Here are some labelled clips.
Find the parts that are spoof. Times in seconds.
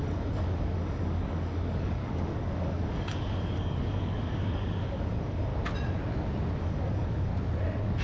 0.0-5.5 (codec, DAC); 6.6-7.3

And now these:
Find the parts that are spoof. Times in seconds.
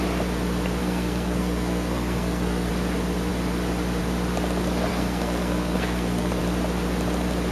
0.8-2.7 (codec, SNAC); 4.9-6.4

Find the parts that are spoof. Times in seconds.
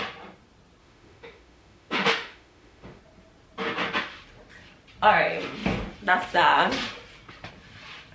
0.8-3.0 (autoencoder, DAC-VAE)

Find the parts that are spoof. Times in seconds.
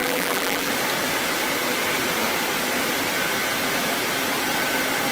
0.0-0.7 (vocoder, BigVGAN v2)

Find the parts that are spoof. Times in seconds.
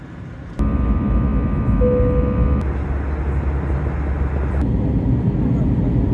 none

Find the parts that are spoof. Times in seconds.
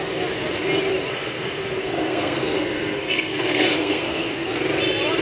1.1-4.2 (codec, SNAC)